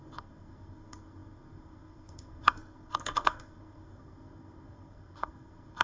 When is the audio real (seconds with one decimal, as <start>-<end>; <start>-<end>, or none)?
none